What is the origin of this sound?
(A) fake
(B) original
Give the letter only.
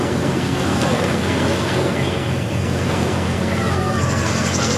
A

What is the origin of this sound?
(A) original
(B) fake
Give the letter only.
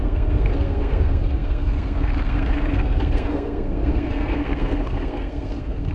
B